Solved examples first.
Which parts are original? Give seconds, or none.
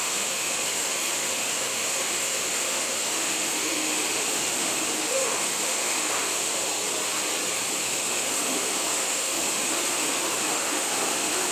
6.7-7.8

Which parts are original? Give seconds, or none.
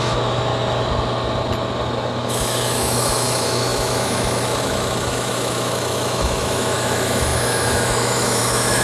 0.5-2.2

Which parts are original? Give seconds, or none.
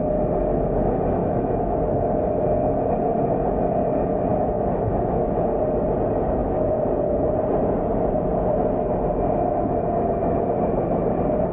0.0-1.2; 1.8-4.3; 5.4-6.4; 6.9-11.5